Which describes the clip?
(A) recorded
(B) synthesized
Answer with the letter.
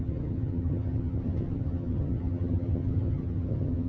B